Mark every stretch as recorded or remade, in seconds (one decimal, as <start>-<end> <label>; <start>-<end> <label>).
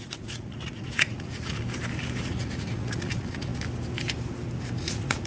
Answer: 0.0-1.6 remade; 1.6-2.2 recorded; 2.2-3.5 remade; 3.5-4.8 recorded; 4.8-5.3 remade